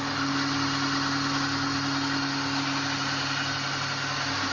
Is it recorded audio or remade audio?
recorded